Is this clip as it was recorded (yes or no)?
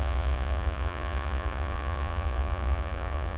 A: no